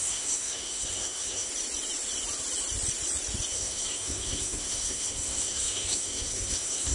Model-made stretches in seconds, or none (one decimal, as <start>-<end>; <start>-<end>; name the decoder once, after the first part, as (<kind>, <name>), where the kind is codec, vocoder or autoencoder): 0.0-1.5 (codec, SNAC); 3.5-6.9

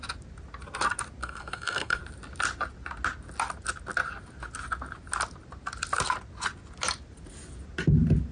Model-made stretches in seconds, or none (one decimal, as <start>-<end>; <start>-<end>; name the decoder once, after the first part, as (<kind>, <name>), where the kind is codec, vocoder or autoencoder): 1.2-2.0 (codec, SNAC)